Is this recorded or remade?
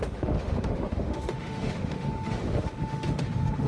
remade